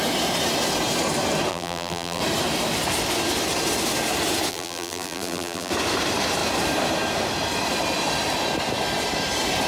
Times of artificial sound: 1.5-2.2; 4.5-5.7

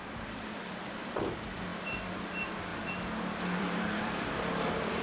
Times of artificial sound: 0.0-5.0

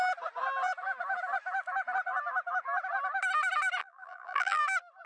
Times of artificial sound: 3.8-4.6

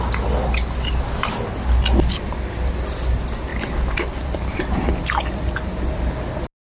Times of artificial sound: none

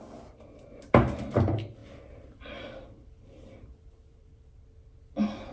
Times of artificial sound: 1.8-4.6